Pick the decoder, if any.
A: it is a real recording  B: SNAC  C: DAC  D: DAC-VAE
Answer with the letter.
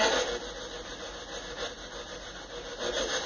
A